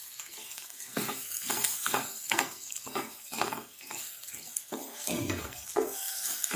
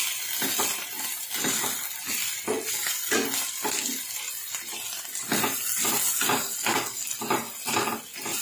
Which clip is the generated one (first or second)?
first